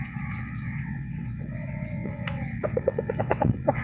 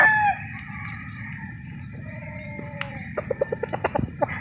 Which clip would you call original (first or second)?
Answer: second